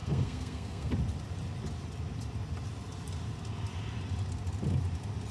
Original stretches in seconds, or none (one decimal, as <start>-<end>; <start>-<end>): 0.9-5.3